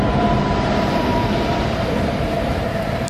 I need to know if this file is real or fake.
fake